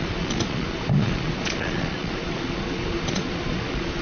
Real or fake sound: fake